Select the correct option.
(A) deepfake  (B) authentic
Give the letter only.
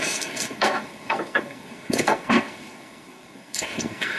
A